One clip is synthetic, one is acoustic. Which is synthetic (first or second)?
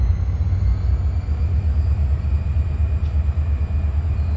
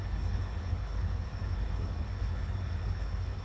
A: second